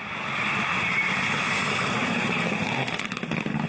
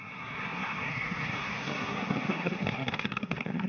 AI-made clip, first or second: second